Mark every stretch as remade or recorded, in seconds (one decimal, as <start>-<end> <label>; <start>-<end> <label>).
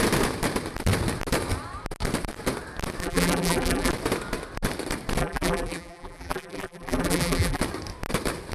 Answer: 0.0-3.0 recorded; 3.0-3.9 remade; 3.9-5.2 recorded; 5.2-7.6 remade; 7.6-8.5 recorded